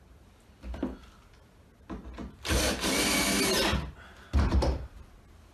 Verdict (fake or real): real